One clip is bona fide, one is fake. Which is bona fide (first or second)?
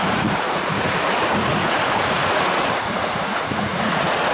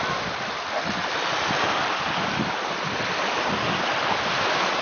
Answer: second